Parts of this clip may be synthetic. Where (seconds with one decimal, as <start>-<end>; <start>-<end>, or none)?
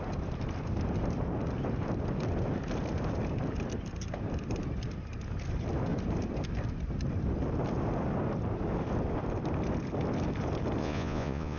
10.8-11.6